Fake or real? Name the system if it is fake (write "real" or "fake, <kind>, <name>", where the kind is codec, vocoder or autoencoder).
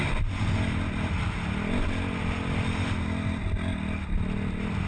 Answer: real